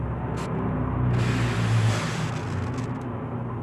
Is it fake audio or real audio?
real